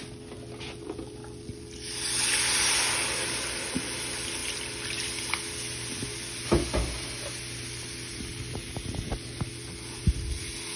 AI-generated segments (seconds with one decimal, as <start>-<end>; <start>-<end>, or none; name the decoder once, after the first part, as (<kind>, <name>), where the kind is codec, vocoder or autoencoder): none